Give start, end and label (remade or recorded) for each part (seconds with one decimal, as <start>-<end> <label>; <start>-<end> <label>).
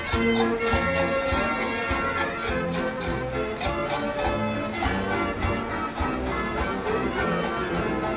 0.0-8.2 recorded